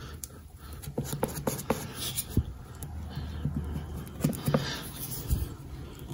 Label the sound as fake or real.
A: real